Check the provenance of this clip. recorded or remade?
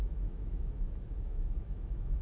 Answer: remade